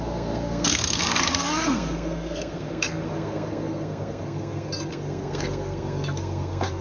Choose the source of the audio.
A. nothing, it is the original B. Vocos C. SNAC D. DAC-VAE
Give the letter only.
C